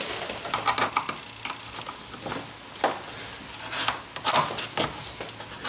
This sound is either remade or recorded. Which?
recorded